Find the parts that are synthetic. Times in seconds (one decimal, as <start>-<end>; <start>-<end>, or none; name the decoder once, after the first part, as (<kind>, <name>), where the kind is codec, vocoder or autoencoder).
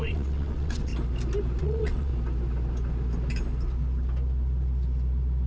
0.0-0.9 (vocoder, WaveNeXt); 1.6-2.1